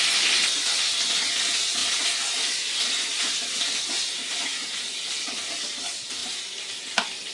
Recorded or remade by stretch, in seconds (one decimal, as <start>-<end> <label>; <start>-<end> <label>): 0.0-7.3 recorded